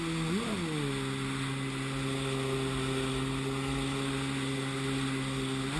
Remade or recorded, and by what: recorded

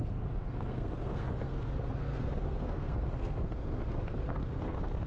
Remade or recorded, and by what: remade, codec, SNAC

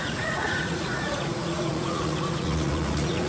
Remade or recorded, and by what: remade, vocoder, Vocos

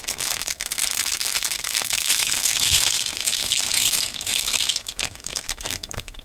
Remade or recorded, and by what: remade, codec, SNAC